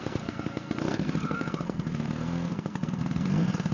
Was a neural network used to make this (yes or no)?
yes